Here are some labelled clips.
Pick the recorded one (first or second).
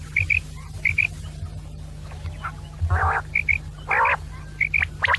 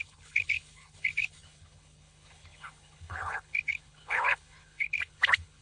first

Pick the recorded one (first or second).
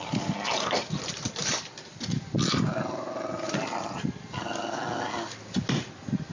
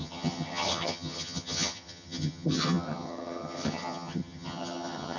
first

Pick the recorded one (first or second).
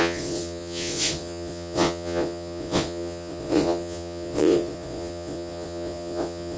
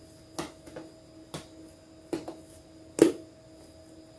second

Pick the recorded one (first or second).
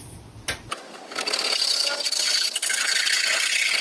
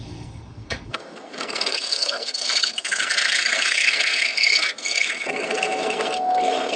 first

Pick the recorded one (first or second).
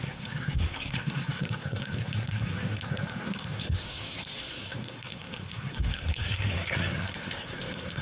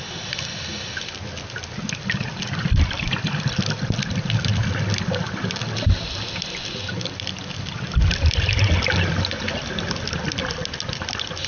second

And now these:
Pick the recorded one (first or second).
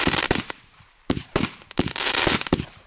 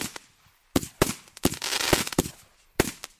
second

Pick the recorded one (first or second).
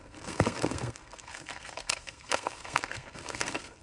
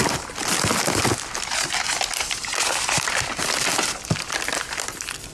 second